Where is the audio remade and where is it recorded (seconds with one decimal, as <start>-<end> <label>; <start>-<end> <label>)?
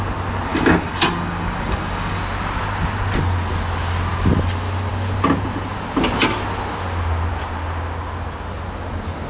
0.0-0.5 recorded; 0.5-2.2 remade; 2.2-9.3 recorded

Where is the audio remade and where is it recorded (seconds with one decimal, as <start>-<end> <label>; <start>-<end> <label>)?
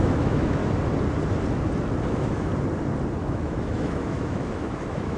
0.0-0.6 remade; 0.6-2.1 recorded; 2.1-2.5 remade; 2.5-3.2 recorded; 3.2-5.2 remade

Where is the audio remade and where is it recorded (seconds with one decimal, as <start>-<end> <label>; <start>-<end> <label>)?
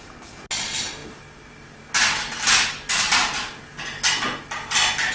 0.0-5.1 recorded